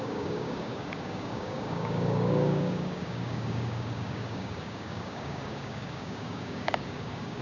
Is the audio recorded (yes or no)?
no